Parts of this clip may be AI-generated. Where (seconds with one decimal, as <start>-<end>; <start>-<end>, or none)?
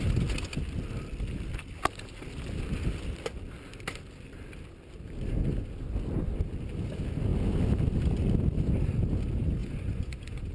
9.6-10.5